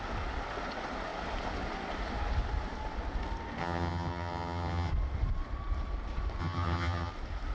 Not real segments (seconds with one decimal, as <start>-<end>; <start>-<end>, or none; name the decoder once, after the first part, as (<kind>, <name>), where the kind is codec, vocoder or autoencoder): 3.6-4.9 (vocoder, HiFi-GAN); 6.4-7.1